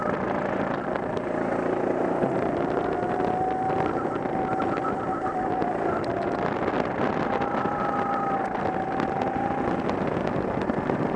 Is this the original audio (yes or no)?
yes